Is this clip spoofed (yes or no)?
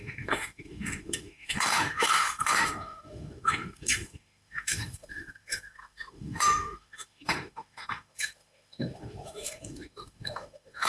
yes